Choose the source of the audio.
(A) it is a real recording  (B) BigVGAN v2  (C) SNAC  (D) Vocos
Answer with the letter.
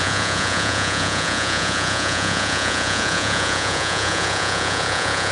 D